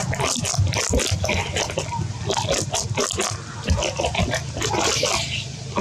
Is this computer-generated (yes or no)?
no